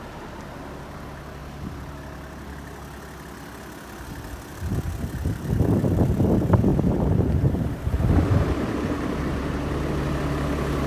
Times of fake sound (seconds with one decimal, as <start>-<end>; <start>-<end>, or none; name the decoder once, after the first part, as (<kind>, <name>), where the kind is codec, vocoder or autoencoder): 6.7-9.3 (vocoder, BigVGAN v2)